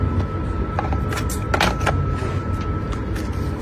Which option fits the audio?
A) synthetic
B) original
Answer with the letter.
B